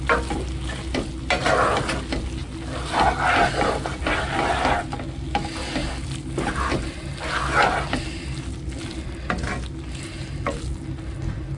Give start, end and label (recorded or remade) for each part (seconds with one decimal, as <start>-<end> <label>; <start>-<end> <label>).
0.0-11.6 recorded